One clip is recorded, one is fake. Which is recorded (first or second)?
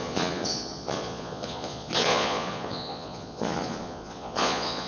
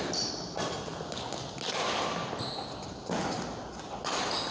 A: second